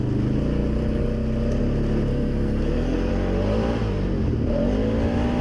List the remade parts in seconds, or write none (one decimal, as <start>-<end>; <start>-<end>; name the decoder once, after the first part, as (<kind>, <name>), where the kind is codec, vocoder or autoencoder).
2.1-3.1 (codec, SNAC)